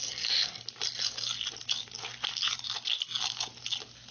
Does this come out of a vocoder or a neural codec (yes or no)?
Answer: no